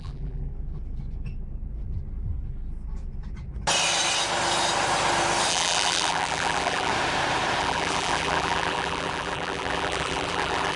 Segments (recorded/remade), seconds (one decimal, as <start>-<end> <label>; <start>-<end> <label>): 0.0-0.5 remade; 0.5-5.5 recorded; 5.5-6.9 remade; 6.9-7.6 recorded; 7.6-10.8 remade